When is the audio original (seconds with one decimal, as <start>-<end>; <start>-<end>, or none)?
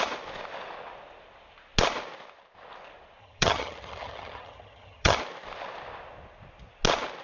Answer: 0.0-3.2; 5.2-7.2